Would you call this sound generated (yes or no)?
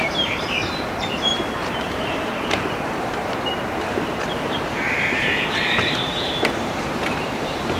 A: yes